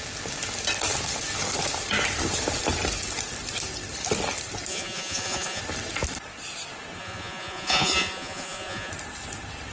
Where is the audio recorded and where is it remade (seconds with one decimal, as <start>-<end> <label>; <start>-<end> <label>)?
0.0-4.7 recorded; 4.7-5.6 remade; 5.6-7.0 recorded; 7.0-8.9 remade; 8.9-9.7 recorded